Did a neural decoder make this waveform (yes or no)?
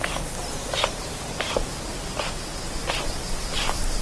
no